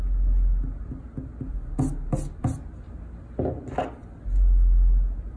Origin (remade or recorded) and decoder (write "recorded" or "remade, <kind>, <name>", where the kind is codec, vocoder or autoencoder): recorded